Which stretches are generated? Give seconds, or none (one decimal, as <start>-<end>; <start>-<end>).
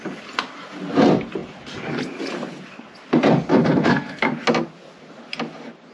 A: 3.5-4.2